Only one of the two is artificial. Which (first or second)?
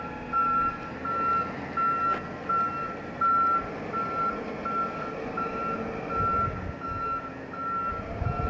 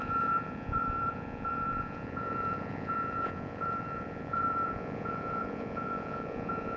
second